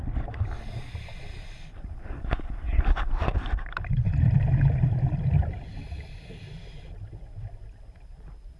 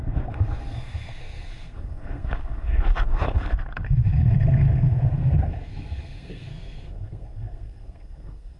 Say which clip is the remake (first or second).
second